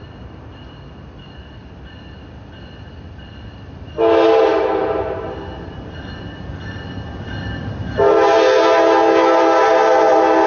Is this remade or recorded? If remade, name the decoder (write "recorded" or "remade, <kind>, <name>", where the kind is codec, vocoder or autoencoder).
recorded